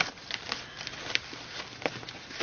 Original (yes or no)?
yes